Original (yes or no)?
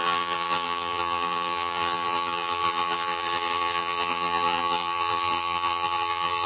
no